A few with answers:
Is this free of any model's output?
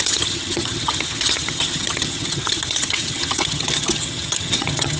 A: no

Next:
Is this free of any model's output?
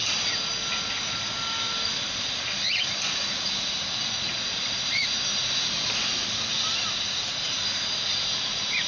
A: yes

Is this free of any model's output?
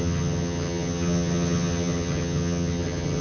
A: no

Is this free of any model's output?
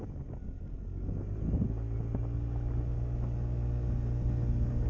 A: yes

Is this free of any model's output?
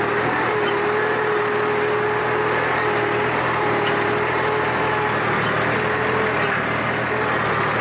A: yes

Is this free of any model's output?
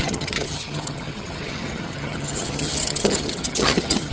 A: no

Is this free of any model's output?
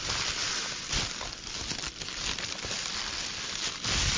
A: yes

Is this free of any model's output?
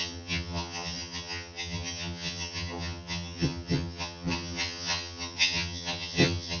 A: no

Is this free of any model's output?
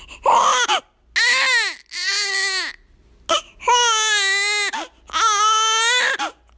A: yes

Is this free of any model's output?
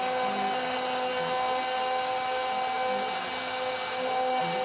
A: yes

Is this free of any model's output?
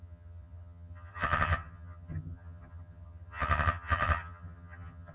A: no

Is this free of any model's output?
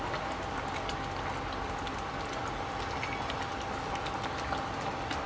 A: yes